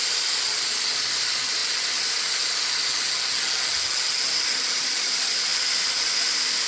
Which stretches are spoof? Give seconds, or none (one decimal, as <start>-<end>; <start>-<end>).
0.0-1.6; 4.7-6.7